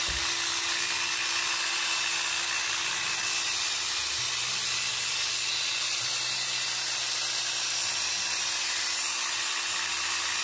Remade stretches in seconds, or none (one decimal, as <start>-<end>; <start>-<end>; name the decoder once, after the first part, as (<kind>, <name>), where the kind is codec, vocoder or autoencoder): none